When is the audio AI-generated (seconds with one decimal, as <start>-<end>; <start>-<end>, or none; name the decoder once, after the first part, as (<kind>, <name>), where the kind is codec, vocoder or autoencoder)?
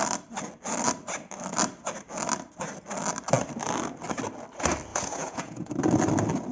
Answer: 4.9-5.7 (vocoder, Vocos)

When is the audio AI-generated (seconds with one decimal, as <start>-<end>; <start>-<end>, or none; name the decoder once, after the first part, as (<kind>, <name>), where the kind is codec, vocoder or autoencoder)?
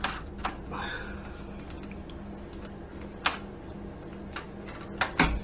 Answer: none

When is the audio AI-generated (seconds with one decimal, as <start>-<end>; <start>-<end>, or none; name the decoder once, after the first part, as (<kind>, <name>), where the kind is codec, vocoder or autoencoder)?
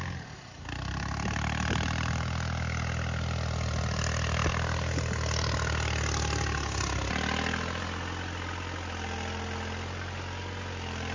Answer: none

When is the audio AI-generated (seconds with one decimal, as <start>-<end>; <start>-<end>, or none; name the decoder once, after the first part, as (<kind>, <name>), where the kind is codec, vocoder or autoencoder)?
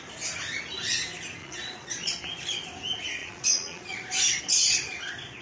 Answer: 1.4-2.2 (vocoder, Vocos); 3.2-4.4